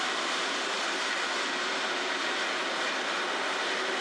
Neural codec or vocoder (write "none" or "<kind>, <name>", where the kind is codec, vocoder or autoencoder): none